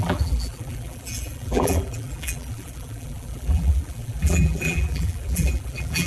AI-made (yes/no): yes